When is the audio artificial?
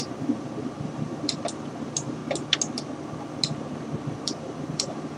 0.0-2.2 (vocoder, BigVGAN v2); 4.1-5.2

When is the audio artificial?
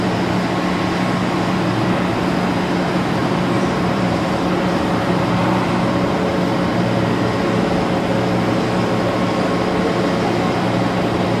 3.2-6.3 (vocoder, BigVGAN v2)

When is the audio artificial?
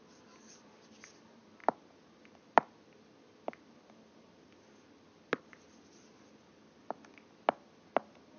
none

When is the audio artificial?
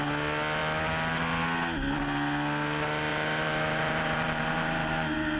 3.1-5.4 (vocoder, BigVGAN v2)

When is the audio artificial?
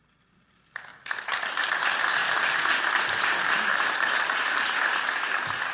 0.9-1.7 (vocoder, BigVGAN v2); 3.7-4.8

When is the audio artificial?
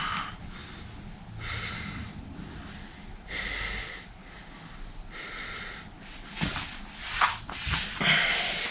none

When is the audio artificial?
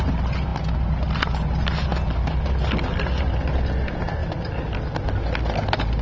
none